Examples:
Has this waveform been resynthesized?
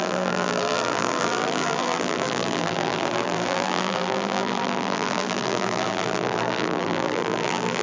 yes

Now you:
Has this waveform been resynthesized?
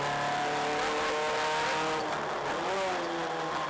no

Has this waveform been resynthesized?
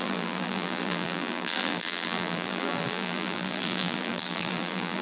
yes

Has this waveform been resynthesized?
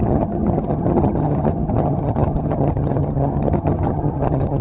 yes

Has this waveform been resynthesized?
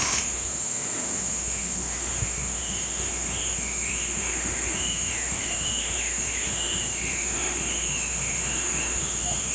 yes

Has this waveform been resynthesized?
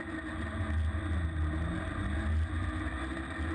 no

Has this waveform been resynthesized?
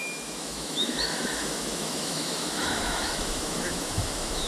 yes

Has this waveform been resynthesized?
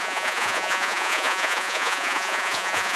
yes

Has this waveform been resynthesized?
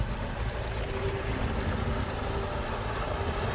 no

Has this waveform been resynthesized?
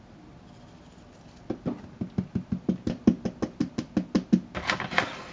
no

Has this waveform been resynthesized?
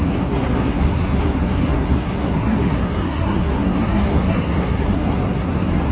yes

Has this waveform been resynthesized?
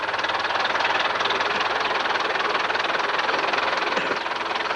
no